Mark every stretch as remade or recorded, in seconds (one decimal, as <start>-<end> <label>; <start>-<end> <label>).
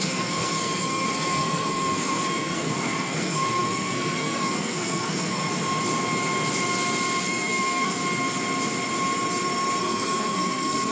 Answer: 0.0-5.4 remade; 5.4-7.2 recorded; 7.2-8.0 remade; 8.0-9.8 recorded; 9.8-10.9 remade